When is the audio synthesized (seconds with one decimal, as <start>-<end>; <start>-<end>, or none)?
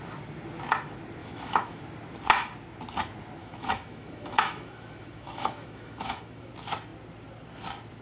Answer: 1.2-1.8; 3.4-6.5